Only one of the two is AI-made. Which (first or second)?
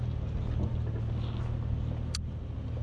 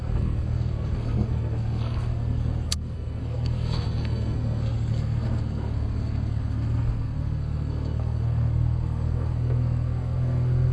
second